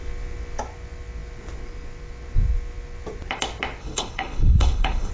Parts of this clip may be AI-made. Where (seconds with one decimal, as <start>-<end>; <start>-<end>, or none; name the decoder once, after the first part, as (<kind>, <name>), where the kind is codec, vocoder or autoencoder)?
3.8-5.1 (codec, HILCodec)